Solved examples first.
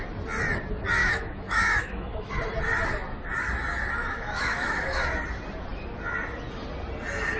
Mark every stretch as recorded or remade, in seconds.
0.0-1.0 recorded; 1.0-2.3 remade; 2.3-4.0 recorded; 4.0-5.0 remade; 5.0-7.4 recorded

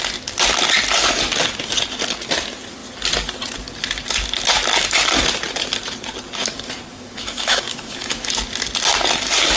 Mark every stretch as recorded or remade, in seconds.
0.0-6.9 recorded; 6.9-8.3 remade; 8.3-9.6 recorded

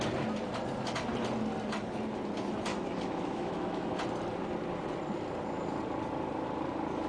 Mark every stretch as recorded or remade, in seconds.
0.0-2.7 recorded; 2.7-3.9 remade; 3.9-7.1 recorded

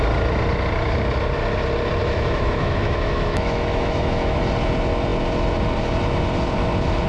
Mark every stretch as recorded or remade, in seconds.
0.0-2.0 recorded; 2.0-4.4 remade; 4.4-7.1 recorded